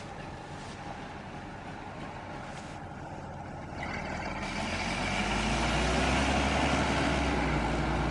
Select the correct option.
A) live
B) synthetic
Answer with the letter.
A